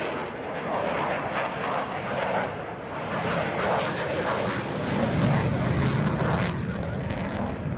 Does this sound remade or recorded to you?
recorded